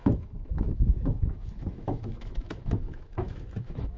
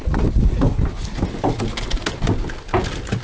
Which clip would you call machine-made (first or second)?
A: first